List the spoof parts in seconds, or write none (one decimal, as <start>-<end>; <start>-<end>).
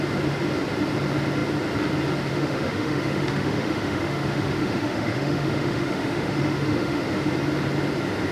2.3-7.3